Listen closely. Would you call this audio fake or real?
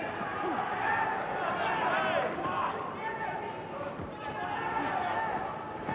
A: real